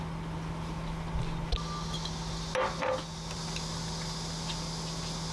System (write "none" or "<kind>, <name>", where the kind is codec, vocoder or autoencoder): none